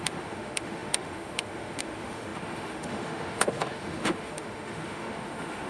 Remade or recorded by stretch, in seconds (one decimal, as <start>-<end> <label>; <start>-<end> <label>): 0.0-5.7 remade